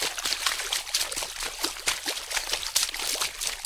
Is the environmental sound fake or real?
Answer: real